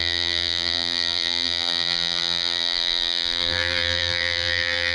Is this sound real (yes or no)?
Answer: no